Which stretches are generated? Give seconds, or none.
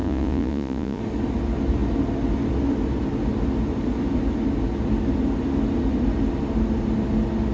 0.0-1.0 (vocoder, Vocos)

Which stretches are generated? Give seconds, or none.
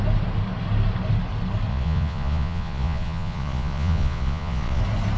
1.7-4.8 (vocoder, Vocos)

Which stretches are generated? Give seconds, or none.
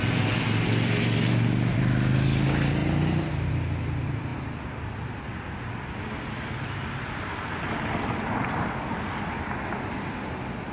none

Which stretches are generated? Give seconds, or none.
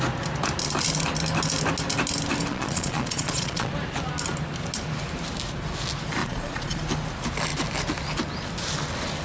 2.5-3.7 (vocoder, Vocos); 6.2-6.8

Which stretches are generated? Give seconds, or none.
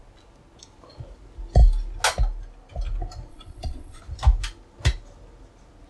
3.3-4.0 (vocoder, Vocos)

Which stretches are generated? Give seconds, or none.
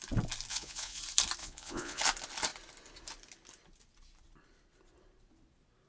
0.5-1.0 (vocoder, Vocos); 1.4-2.0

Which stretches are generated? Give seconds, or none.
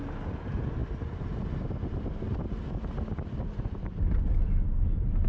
none